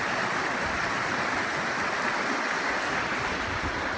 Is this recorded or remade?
remade